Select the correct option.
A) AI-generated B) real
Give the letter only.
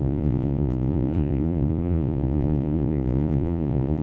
A